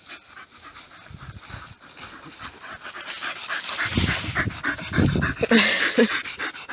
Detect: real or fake real